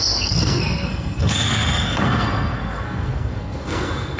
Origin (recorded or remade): remade